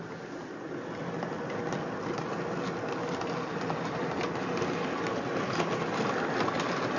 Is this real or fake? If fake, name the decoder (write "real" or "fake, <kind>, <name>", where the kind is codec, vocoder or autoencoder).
real